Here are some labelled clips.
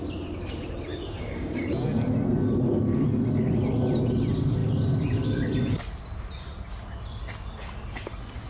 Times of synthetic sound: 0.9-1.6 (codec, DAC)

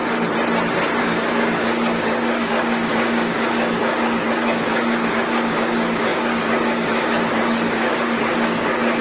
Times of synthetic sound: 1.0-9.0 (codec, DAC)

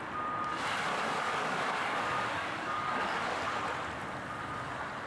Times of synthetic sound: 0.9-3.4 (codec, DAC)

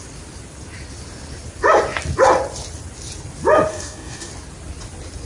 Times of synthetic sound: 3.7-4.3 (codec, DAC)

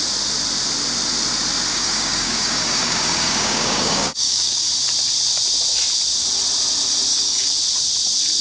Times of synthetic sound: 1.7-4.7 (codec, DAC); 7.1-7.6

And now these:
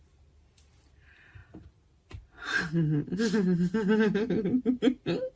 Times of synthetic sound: none

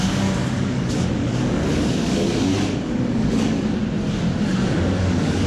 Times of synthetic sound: 0.0-3.8 (codec, DAC); 4.4-5.5

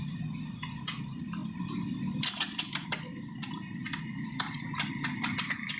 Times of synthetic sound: none